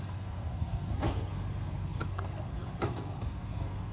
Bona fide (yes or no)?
no